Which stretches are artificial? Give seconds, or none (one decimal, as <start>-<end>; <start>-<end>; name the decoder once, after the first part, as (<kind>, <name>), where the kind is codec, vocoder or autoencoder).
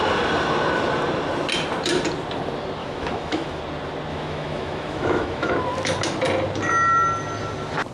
2.8-3.6 (autoencoder, DAC-VAE); 4.1-5.5